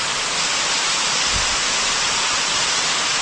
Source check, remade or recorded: recorded